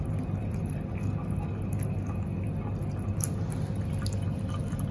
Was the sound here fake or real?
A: real